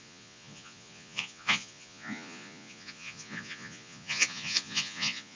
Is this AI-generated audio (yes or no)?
yes